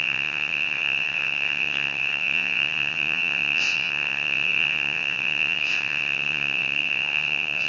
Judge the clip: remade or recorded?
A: remade